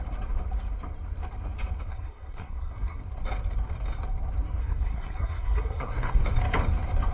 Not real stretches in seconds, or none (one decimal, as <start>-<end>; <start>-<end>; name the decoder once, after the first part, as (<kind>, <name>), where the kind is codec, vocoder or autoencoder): 1.9-3.0 (codec, SNAC); 4.6-6.2